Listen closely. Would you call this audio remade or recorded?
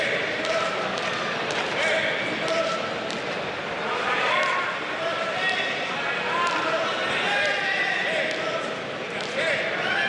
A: recorded